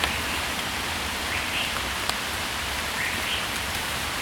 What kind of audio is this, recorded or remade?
remade